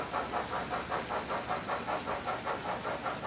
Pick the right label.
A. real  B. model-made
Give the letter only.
A